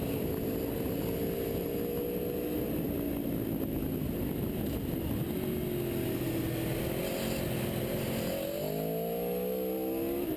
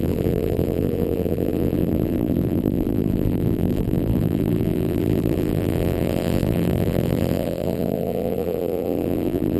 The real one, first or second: first